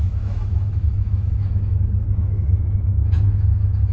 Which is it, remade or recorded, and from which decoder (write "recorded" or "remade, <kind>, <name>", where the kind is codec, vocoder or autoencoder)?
remade, autoencoder, DAC-VAE